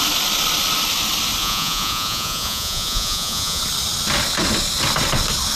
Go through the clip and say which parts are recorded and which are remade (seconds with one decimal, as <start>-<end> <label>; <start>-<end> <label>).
0.0-1.4 recorded; 1.4-3.6 remade; 3.6-5.6 recorded